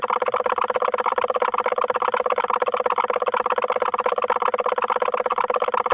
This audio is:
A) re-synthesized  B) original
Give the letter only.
A